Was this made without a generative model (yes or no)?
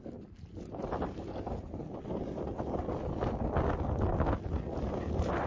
yes